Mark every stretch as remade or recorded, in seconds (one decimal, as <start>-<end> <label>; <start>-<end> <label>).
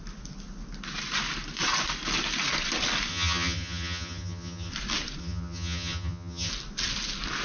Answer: 0.0-3.1 recorded; 3.1-4.7 remade; 4.7-5.2 recorded; 5.2-6.5 remade; 6.5-7.4 recorded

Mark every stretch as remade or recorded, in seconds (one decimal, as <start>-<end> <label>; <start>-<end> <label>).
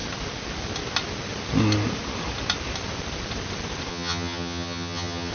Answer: 0.0-3.9 recorded; 3.9-5.3 remade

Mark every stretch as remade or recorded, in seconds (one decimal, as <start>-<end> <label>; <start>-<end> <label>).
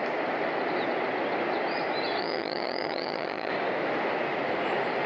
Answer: 0.0-2.2 recorded; 2.2-3.5 remade; 3.5-5.1 recorded